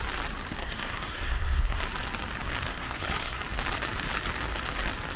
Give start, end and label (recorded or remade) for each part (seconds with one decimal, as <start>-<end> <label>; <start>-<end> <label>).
0.0-0.6 recorded; 0.6-1.8 remade; 1.8-2.7 recorded; 2.7-3.4 remade; 3.4-5.2 recorded